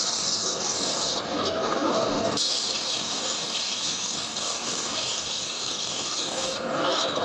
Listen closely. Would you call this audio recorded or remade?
remade